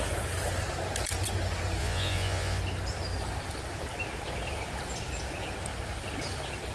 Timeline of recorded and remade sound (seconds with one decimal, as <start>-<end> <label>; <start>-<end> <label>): 0.0-1.8 recorded; 1.8-2.6 remade; 2.6-6.7 recorded